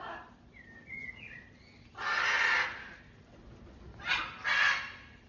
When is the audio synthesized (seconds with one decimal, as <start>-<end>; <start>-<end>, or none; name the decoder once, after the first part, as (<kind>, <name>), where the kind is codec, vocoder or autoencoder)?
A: 0.9-1.4 (vocoder, Vocos)